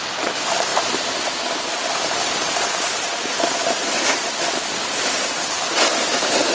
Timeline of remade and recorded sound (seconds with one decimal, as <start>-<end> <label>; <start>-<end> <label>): 0.0-6.5 recorded